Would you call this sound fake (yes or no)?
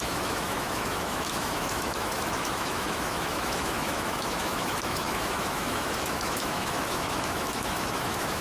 yes